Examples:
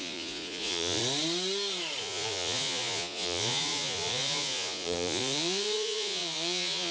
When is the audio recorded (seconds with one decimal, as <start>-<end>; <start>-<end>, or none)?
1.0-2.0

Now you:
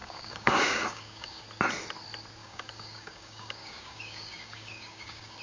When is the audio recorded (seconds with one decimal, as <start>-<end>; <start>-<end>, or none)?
1.4-2.4

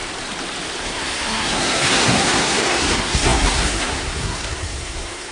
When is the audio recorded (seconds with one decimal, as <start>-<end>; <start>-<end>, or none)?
0.0-0.8